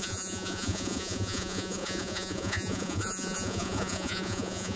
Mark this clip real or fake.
fake